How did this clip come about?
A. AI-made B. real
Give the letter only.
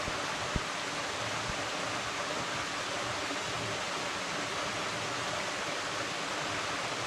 B